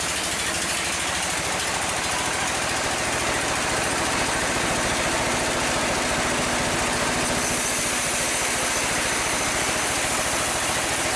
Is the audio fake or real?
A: real